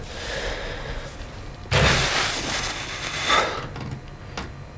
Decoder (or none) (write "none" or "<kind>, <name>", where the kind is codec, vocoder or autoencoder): none